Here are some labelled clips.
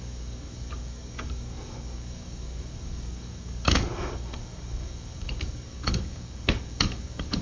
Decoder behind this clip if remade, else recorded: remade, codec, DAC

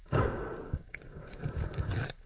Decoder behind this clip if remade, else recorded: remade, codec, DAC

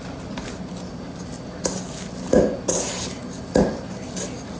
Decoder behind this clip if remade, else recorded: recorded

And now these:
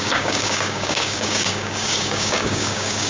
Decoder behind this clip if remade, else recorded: remade, codec, DAC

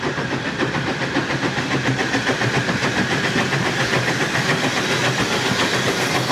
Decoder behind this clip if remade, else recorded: recorded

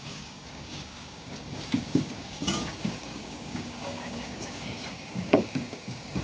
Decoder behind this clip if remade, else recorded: remade, codec, DAC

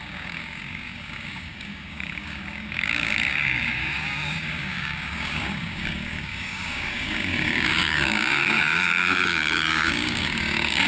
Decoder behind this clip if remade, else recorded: remade, codec, DAC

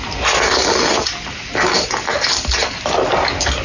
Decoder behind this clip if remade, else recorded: recorded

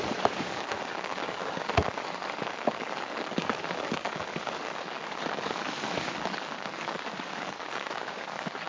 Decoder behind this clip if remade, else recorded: remade, codec, DAC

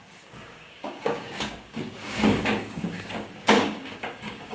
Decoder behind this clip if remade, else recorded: remade, codec, DAC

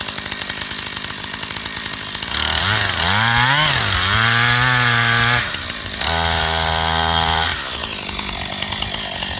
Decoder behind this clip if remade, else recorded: recorded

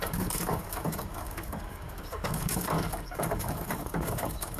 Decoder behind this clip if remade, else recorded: remade, codec, DAC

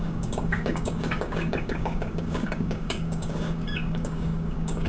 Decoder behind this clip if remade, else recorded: remade, codec, DAC